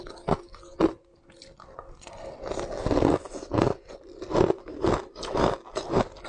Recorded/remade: recorded